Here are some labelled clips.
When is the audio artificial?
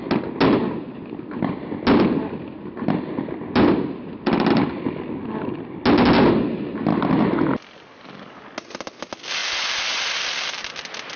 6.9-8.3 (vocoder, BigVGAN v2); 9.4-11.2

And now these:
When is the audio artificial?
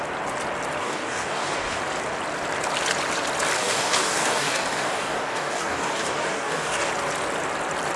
0.8-1.8 (codec, DAC); 3.6-6.9